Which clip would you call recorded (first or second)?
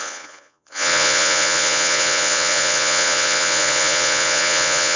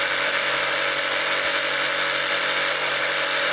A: second